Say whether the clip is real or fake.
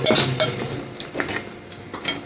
real